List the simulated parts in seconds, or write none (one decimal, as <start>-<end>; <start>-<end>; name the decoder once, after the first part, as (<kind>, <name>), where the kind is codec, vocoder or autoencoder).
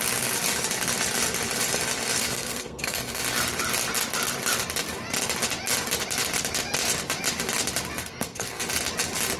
2.2-3.2 (codec, SNAC); 8.0-8.6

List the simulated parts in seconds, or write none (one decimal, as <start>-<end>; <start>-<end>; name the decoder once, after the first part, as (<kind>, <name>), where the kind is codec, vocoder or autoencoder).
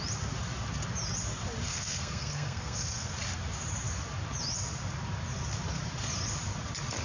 1.7-3.1 (codec, SNAC)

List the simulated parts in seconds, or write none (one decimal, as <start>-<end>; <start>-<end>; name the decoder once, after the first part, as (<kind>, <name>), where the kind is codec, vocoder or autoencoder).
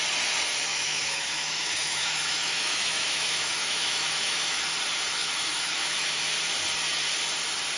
0.7-4.6 (autoencoder, DAC-VAE); 5.2-6.2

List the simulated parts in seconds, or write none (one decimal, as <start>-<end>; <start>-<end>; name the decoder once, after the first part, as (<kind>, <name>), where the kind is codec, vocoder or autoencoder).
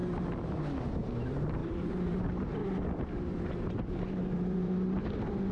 0.9-2.6 (vocoder, BigVGAN v2); 3.7-5.5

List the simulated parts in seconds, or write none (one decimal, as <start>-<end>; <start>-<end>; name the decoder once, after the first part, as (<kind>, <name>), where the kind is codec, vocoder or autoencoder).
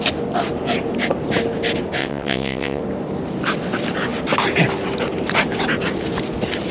2.0-2.8 (vocoder, WaveNeXt)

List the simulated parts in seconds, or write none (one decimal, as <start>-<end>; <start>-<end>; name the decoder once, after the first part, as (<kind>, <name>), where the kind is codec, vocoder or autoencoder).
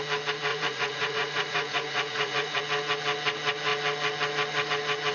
0.5-2.6 (vocoder, Vocos)